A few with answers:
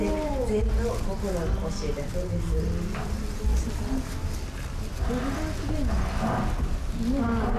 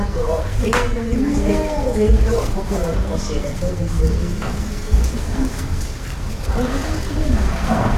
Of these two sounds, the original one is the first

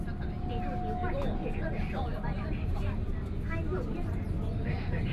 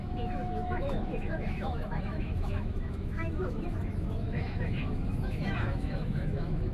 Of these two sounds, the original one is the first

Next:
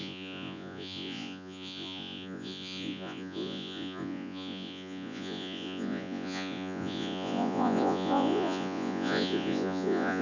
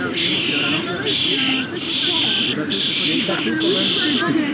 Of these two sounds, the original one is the second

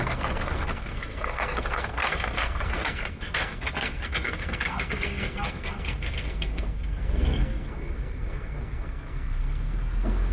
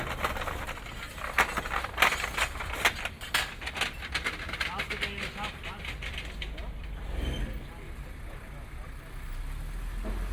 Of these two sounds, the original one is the second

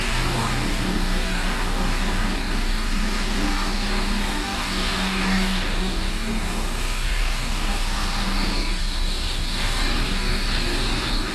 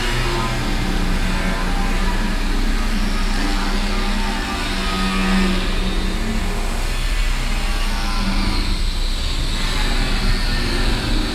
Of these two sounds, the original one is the second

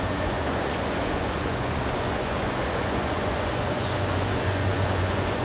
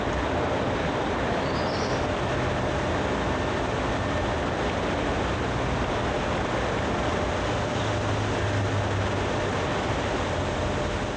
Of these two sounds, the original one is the second